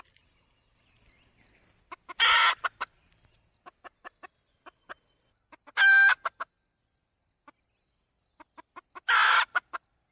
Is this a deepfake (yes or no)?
no